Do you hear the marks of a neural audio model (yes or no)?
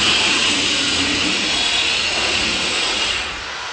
yes